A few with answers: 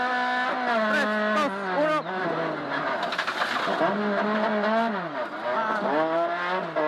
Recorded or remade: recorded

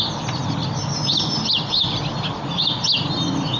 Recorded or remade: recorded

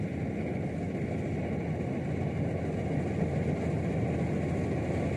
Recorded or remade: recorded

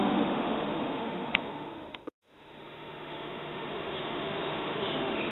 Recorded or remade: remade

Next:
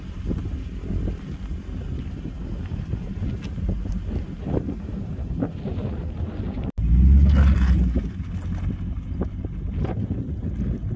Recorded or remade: recorded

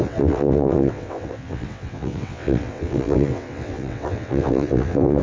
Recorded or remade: remade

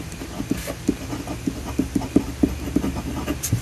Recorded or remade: recorded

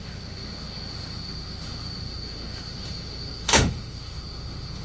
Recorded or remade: remade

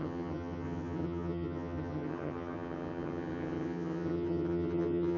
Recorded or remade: remade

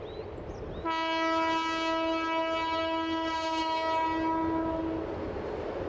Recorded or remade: recorded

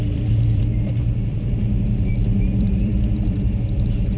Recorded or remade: remade